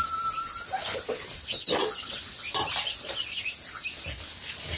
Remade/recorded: recorded